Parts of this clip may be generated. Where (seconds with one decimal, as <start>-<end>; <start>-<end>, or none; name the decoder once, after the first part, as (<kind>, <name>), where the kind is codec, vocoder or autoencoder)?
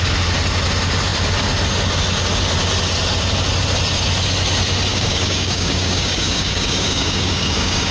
4.9-7.9 (codec, DAC)